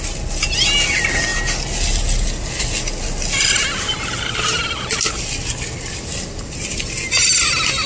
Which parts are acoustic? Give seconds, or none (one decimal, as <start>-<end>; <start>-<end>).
0.0-7.9